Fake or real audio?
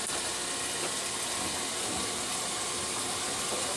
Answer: real